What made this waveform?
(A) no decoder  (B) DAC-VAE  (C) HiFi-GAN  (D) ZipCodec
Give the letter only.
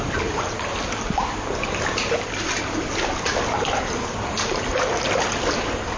A